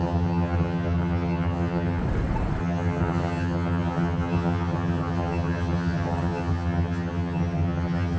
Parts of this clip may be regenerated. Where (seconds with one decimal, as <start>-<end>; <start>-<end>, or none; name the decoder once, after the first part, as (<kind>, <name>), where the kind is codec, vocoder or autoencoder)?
0.0-2.0 (vocoder, HiFi-GAN); 2.6-8.2